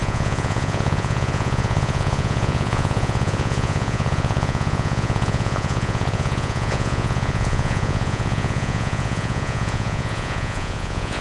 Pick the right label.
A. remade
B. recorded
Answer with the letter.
A